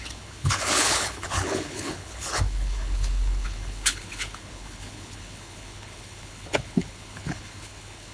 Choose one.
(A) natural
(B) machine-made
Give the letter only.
B